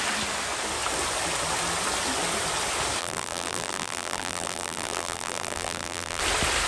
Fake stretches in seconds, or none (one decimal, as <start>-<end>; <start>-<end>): 3.0-6.2